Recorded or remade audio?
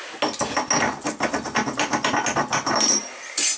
recorded